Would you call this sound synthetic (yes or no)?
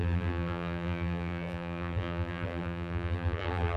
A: yes